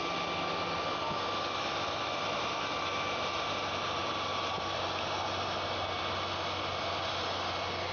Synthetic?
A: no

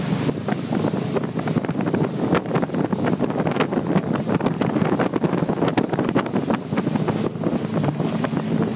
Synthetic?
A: no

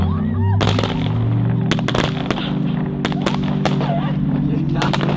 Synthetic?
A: no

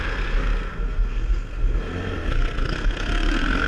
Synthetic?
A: yes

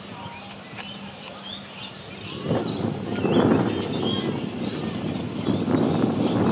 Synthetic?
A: no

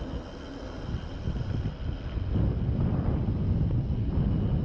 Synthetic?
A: no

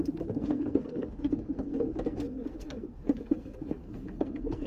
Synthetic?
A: yes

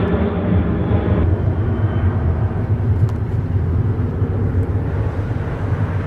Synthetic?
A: no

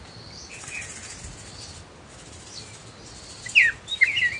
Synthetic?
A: no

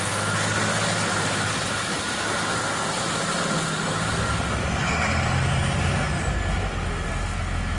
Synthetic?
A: no